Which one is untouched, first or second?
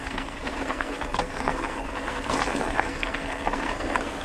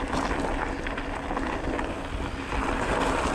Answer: second